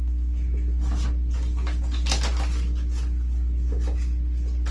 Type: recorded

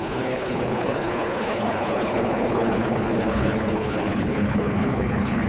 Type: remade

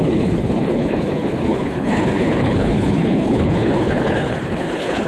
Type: remade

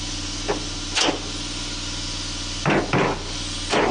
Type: recorded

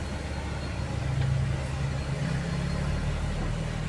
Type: recorded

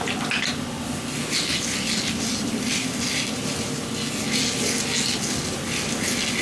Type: recorded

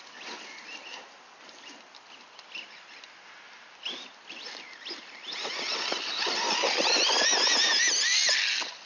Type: recorded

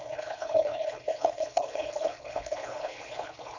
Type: remade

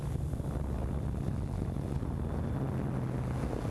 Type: recorded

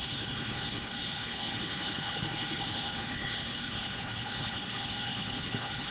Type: remade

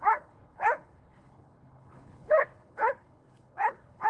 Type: remade